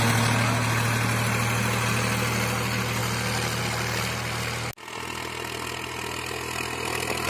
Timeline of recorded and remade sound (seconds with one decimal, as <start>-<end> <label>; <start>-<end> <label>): 0.0-7.3 recorded